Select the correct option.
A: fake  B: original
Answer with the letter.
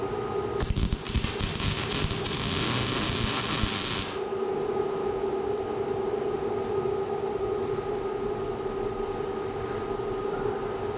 B